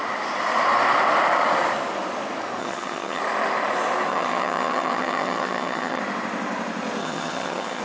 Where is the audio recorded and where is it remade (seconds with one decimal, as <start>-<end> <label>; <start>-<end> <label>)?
0.0-2.6 recorded; 2.6-3.2 remade; 3.2-4.1 recorded; 4.1-6.0 remade; 6.0-7.0 recorded; 7.0-7.8 remade